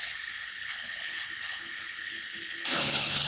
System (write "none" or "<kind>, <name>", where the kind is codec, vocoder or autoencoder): codec, HILCodec